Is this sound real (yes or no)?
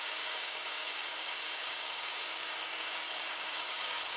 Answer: no